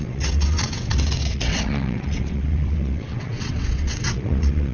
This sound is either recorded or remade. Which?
remade